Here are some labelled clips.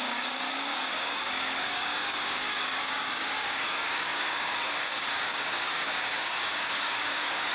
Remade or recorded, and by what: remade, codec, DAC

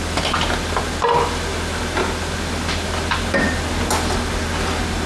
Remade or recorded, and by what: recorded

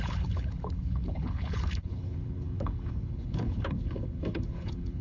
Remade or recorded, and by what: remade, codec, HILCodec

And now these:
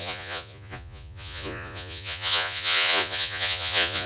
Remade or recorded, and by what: remade, vocoder, Vocos